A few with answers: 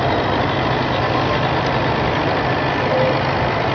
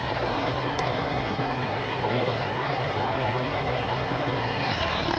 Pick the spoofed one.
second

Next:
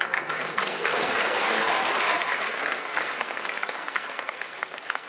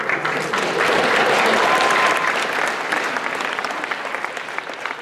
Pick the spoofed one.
first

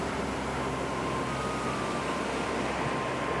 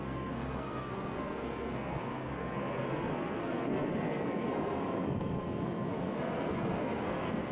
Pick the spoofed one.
second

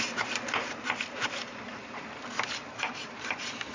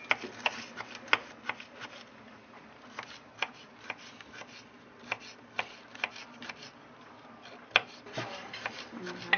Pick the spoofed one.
first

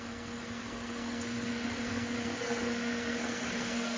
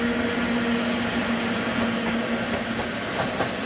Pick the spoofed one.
first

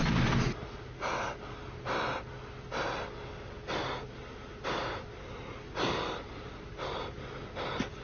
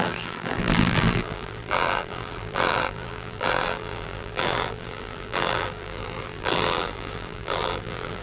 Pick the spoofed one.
second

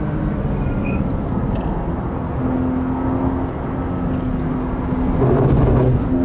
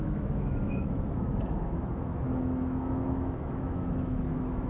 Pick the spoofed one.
second